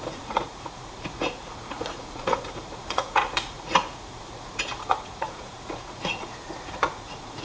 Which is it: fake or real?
fake